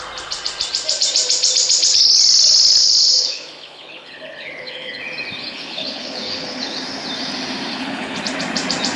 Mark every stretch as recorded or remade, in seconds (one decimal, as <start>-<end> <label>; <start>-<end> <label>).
0.0-2.8 recorded; 2.8-5.0 remade; 5.0-5.4 recorded; 5.4-6.8 remade; 6.8-7.7 recorded; 7.7-8.2 remade; 8.2-9.0 recorded

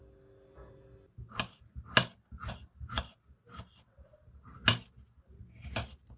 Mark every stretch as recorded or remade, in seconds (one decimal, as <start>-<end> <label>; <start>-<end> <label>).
0.0-6.2 recorded

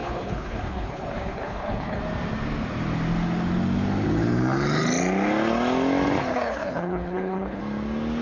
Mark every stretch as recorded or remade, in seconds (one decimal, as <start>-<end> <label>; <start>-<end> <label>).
0.0-2.0 remade; 2.0-6.3 recorded; 6.3-7.6 remade; 7.6-8.2 recorded

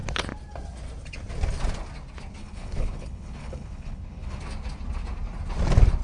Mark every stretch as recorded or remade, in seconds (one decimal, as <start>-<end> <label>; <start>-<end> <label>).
0.0-2.4 recorded; 2.4-4.4 remade; 4.4-6.0 recorded

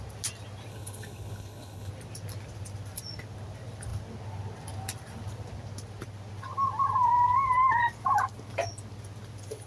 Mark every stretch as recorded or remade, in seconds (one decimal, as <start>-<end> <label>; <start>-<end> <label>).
0.0-0.7 recorded; 0.7-1.9 remade; 1.9-9.7 recorded

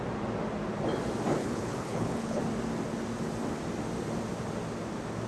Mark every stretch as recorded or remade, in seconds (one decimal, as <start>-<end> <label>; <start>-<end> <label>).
0.0-1.4 recorded; 1.4-2.4 remade; 2.4-5.3 recorded

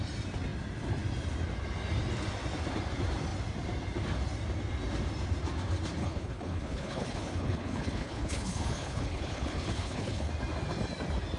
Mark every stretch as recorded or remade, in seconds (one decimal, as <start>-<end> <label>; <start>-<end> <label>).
0.0-6.0 recorded; 6.0-10.3 remade; 10.3-11.4 recorded

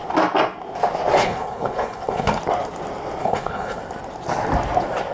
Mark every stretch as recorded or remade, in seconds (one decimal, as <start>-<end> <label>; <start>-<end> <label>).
0.0-1.2 recorded; 1.2-2.4 remade; 2.4-3.2 recorded; 3.2-3.8 remade; 3.8-5.1 recorded